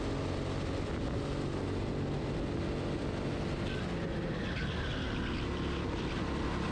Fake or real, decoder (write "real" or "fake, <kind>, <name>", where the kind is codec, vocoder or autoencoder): real